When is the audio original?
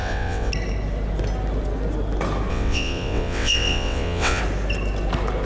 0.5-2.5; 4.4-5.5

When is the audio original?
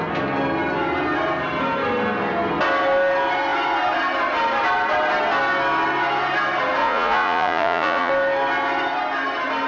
0.0-6.8; 8.1-9.7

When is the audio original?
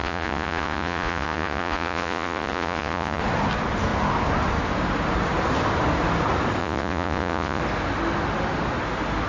3.2-6.6; 7.6-9.3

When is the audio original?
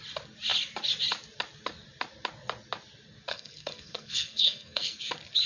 0.0-3.3; 5.1-5.5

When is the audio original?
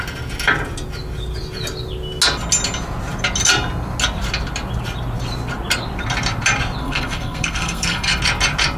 0.0-6.8; 8.2-8.8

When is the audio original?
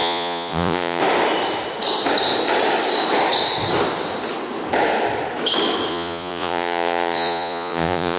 1.0-5.9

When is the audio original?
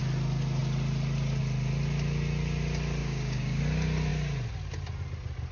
0.0-3.0; 3.6-5.5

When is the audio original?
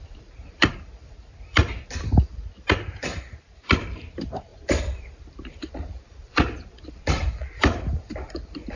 1.6-3.4